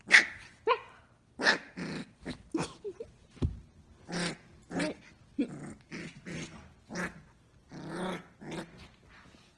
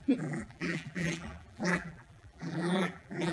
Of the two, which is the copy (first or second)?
second